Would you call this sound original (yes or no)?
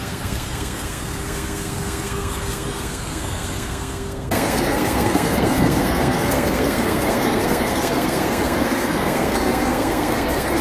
no